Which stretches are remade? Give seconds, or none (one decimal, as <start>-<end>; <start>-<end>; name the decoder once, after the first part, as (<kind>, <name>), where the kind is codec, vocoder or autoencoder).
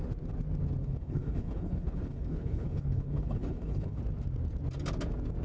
0.8-4.0 (codec, HILCodec)